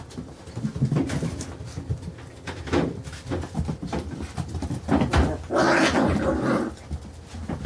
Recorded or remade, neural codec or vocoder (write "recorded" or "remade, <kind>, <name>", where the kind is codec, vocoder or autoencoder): recorded